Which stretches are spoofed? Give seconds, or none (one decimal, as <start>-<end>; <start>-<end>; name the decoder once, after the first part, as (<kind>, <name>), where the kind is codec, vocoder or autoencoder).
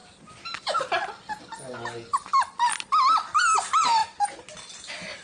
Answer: none